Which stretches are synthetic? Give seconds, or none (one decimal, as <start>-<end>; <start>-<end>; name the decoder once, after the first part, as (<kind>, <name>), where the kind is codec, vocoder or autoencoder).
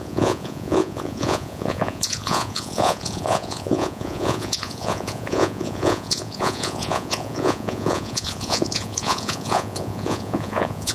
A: 0.0-10.9 (vocoder, Vocos)